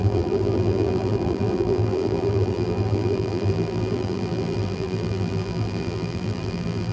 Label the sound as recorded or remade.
remade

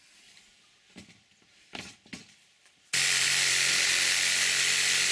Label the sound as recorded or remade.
remade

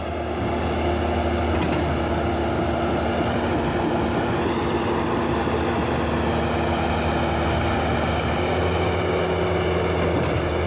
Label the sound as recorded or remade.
recorded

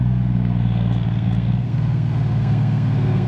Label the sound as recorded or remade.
remade